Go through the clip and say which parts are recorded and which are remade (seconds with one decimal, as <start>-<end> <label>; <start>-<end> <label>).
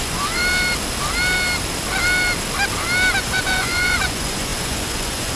0.0-0.4 remade; 0.4-3.2 recorded; 3.2-5.4 remade